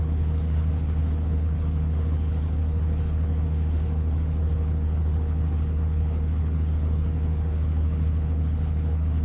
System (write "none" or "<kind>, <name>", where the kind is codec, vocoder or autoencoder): codec, HILCodec